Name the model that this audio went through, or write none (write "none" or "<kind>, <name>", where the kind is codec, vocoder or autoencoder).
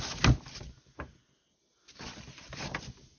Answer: none